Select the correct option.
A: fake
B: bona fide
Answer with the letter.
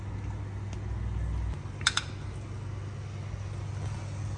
B